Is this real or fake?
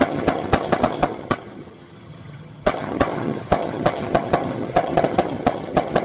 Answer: fake